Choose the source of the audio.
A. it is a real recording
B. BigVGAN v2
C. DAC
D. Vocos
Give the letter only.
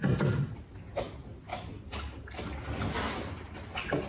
A